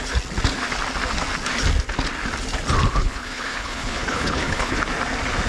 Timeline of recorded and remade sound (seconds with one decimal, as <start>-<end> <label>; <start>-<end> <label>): 0.0-3.0 recorded; 3.0-4.8 remade; 4.8-5.5 recorded